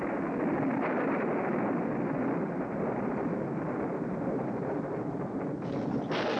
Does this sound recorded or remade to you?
recorded